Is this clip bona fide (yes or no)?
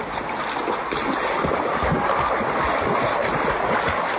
yes